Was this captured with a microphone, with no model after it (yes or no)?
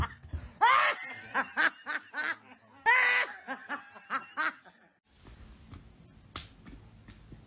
yes